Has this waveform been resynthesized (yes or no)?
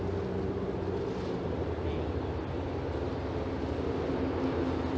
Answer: no